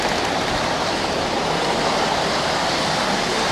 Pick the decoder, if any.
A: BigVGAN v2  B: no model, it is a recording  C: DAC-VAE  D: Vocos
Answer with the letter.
A